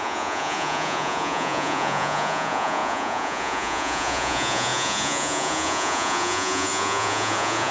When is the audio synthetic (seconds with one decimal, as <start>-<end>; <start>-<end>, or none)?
0.0-7.7